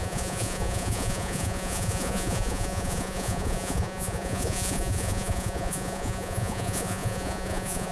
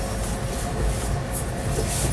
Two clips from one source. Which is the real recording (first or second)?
second